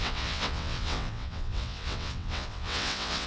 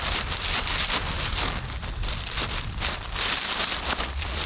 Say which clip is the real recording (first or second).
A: second